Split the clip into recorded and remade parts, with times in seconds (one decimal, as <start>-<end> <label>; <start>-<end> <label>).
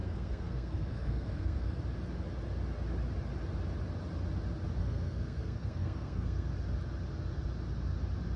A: 0.0-1.8 remade; 1.8-4.8 recorded; 4.8-6.5 remade; 6.5-8.4 recorded